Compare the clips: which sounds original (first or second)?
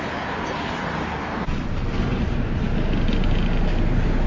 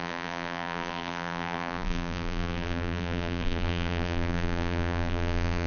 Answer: first